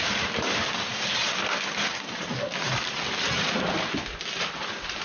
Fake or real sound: real